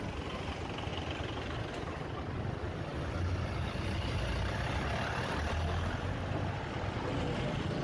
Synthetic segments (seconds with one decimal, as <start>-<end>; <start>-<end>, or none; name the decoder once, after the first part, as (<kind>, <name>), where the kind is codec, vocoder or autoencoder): 0.9-2.2 (vocoder, BigVGAN v2)